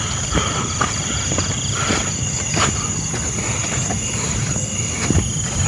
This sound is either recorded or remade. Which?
recorded